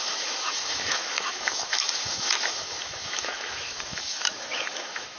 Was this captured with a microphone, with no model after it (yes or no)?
no